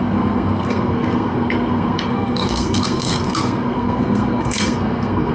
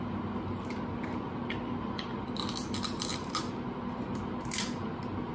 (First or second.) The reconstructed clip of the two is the first